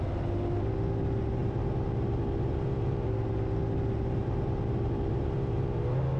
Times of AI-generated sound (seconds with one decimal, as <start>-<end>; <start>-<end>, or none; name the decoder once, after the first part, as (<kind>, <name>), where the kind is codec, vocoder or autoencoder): none